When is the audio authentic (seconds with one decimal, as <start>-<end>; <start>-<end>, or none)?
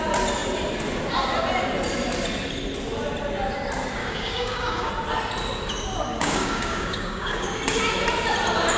0.0-4.0; 4.9-6.1; 7.6-8.8